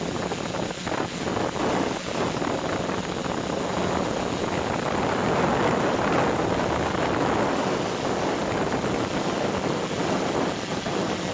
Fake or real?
real